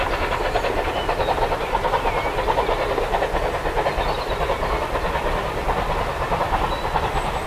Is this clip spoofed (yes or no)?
no